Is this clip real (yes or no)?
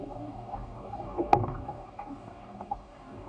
no